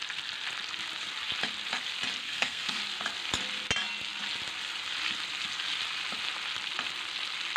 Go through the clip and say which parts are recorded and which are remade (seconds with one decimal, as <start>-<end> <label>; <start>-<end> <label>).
0.0-2.2 recorded; 2.2-2.8 remade; 2.8-7.6 recorded